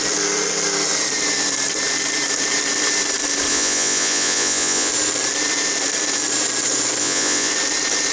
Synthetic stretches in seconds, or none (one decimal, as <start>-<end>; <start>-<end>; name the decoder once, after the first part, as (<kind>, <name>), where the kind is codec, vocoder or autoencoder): 3.5-4.9 (vocoder, Vocos); 7.0-7.5

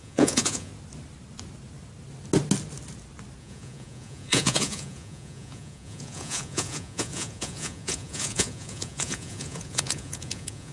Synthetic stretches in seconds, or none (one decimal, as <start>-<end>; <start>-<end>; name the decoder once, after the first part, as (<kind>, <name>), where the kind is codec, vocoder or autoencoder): 0.0-0.7 (vocoder, Vocos); 3.4-10.7

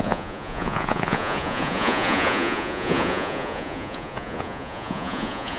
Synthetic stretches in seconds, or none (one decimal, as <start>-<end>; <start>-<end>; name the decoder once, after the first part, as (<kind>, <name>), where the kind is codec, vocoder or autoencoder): 0.0-5.6 (vocoder, Vocos)

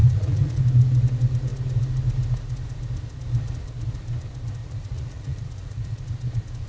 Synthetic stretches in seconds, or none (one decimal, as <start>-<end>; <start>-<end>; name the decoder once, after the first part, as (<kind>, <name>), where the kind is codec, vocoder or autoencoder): 0.0-0.6 (vocoder, Vocos); 4.6-6.0